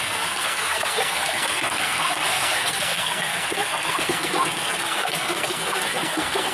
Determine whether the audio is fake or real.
fake